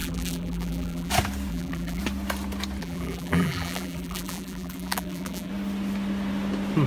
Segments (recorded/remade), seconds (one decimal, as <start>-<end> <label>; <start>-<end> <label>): 0.0-1.1 remade; 1.1-1.5 recorded; 1.5-2.0 remade; 2.0-2.8 recorded; 2.8-5.5 remade; 5.5-6.9 recorded